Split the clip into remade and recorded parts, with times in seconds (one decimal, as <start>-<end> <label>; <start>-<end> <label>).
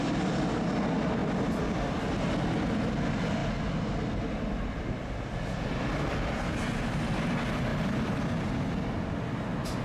0.0-1.2 recorded; 1.2-2.3 remade; 2.3-7.7 recorded; 7.7-8.2 remade; 8.2-9.8 recorded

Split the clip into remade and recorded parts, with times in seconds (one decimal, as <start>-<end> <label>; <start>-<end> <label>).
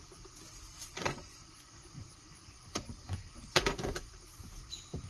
0.0-1.0 recorded; 1.0-4.1 remade; 4.1-5.1 recorded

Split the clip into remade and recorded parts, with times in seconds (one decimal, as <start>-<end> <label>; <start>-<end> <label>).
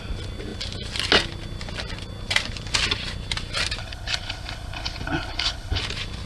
0.0-3.8 recorded; 3.8-5.8 remade; 5.8-6.3 recorded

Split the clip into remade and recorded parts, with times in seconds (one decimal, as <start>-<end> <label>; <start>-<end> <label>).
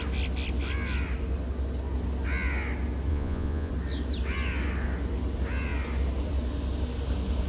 0.0-3.1 recorded; 3.1-3.7 remade; 3.7-7.5 recorded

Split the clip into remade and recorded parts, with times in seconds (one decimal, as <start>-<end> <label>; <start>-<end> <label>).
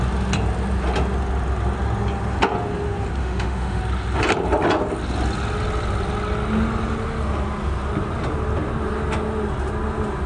0.0-3.2 recorded; 3.2-3.8 remade; 3.8-10.3 recorded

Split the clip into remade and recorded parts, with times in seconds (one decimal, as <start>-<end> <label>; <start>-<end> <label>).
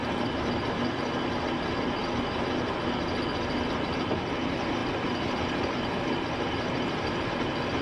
0.0-0.8 remade; 0.8-2.0 recorded; 2.0-2.8 remade; 2.8-7.8 recorded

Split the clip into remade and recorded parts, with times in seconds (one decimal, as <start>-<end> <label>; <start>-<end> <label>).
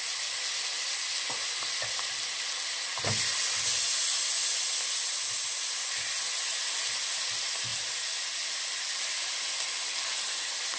0.0-10.8 recorded